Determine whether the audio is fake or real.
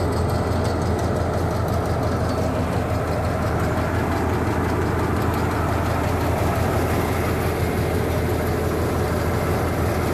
real